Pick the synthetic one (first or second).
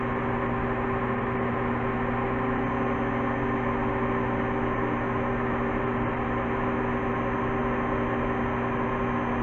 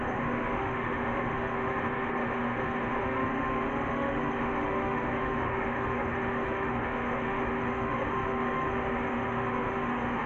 second